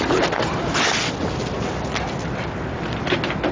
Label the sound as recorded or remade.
recorded